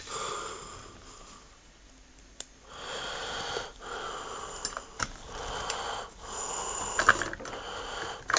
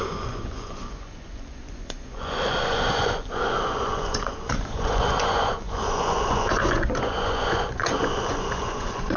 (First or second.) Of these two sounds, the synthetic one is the second